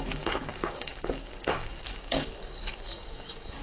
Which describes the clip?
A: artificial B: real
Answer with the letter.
A